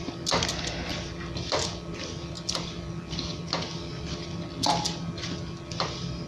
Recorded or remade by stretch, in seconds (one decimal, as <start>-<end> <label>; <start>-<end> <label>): 0.0-6.3 recorded